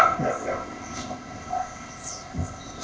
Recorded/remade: remade